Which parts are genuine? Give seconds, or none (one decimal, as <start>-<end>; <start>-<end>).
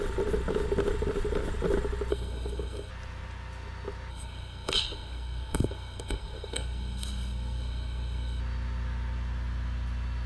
0.0-2.1; 2.9-4.1; 8.4-10.3